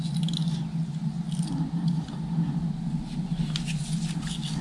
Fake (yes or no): no